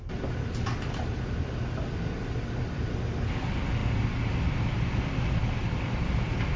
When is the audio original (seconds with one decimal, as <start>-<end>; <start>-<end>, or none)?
0.0-6.6